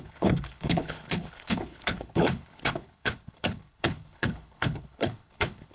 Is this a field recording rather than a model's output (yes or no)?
no